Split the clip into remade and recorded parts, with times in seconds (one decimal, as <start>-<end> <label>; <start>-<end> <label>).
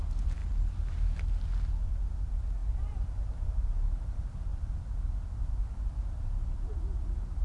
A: 0.0-2.6 recorded; 2.6-3.5 remade; 3.5-7.4 recorded